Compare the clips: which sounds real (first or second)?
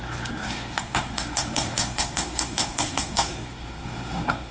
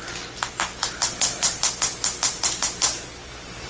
second